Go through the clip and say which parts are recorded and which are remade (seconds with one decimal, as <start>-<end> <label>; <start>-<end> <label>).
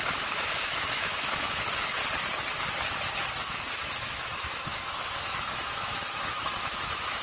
0.0-2.0 remade; 2.0-3.4 recorded; 3.4-7.2 remade